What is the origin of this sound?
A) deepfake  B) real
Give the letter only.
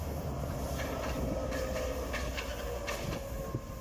B